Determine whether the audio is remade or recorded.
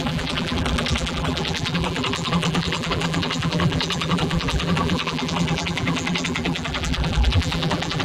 remade